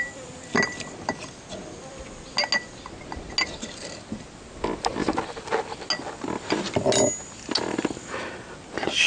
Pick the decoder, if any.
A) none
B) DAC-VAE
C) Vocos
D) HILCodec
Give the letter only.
A